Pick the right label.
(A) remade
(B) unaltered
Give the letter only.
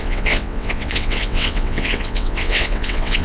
A